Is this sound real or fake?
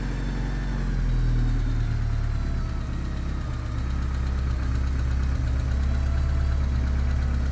real